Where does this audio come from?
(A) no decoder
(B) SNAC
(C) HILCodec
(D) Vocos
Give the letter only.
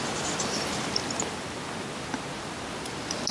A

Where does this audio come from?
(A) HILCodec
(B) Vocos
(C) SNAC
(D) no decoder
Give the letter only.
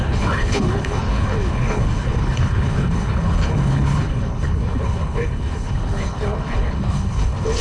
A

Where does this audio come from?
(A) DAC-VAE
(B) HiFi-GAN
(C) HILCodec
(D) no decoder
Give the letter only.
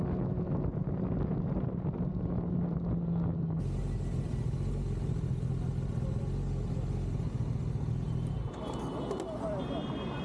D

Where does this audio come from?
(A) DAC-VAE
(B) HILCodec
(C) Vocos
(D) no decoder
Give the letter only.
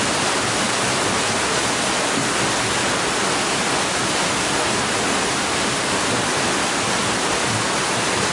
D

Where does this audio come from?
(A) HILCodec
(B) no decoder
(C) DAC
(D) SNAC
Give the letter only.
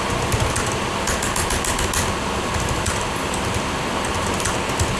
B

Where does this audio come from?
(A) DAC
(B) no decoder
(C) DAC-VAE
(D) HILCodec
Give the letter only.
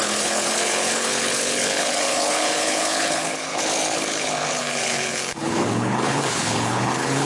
D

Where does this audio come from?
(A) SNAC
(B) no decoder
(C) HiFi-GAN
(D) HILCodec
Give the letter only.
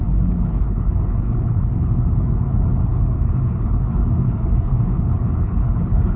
D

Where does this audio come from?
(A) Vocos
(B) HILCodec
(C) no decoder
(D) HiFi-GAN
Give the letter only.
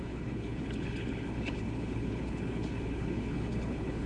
B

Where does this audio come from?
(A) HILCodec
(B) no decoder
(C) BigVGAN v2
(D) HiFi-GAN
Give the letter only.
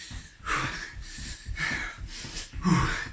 B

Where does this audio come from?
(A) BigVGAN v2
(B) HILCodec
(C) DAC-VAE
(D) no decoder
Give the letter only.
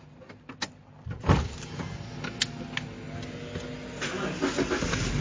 D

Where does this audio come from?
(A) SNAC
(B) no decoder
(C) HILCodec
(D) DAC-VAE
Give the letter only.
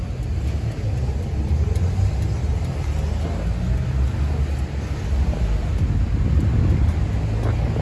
B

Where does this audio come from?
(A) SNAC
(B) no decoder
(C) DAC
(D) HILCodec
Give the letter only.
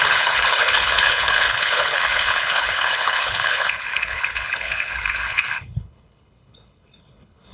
D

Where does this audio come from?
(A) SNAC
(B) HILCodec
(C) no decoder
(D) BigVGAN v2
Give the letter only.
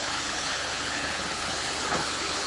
B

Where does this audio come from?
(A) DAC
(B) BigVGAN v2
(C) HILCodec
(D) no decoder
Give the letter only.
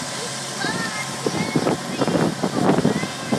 D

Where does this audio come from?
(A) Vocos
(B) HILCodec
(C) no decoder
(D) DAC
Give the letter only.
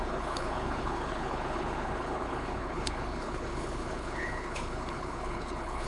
B